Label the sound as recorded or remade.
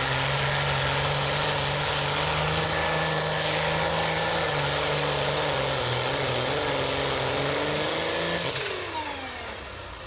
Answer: recorded